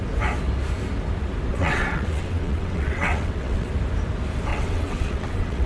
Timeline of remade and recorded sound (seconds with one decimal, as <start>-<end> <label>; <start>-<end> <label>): 0.0-1.5 recorded; 1.5-3.7 remade; 3.7-4.5 recorded; 4.5-5.7 remade